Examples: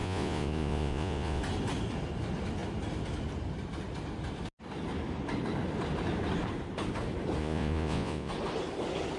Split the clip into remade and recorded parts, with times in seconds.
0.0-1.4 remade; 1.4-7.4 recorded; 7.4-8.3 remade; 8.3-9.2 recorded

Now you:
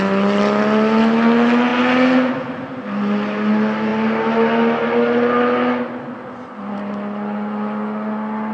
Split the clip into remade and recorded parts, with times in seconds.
0.0-8.5 recorded